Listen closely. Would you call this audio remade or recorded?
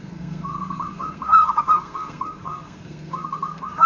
remade